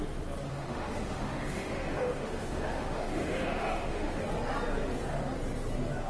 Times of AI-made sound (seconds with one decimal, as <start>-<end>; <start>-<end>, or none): 0.5-4.2